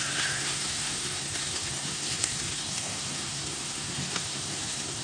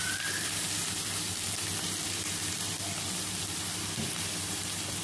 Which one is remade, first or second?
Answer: first